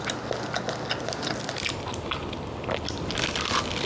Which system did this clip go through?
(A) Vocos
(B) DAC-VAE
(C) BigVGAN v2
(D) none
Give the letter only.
D